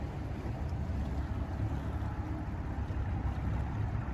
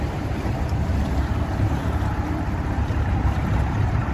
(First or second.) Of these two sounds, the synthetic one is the second